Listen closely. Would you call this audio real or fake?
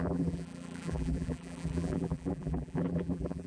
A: fake